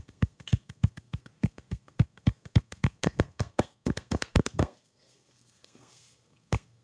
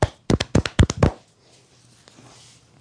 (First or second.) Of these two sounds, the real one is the second